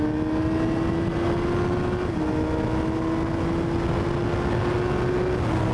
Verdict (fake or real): real